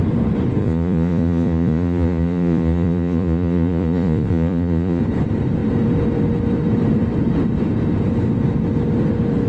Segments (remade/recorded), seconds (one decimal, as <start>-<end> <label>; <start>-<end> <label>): 0.0-0.6 recorded; 0.6-5.0 remade; 5.0-9.5 recorded